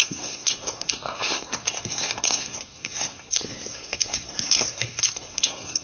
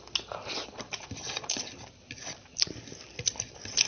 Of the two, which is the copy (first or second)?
first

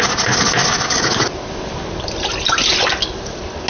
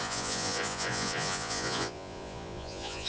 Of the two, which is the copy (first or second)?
second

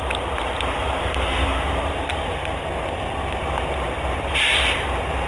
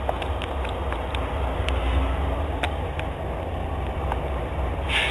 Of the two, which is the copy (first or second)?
first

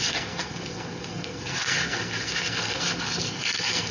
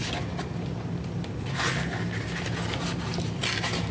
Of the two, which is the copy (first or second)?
first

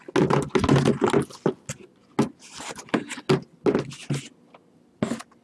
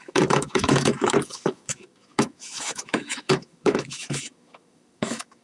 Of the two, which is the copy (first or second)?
second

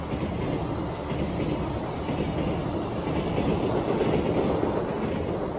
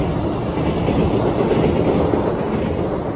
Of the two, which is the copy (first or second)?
first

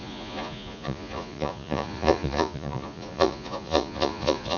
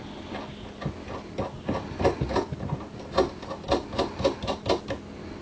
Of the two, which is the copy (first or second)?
first